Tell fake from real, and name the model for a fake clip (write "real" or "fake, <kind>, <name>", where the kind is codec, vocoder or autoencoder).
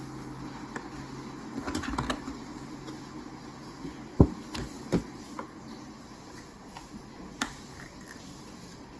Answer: real